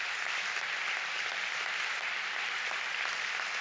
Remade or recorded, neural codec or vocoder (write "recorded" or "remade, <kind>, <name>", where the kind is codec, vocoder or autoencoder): recorded